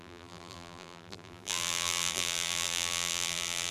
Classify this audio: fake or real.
fake